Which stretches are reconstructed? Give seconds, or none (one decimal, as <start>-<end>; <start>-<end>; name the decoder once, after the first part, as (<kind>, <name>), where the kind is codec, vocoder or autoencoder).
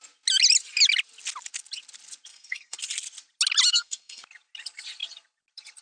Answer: 2.3-2.8 (codec, SNAC); 3.7-4.2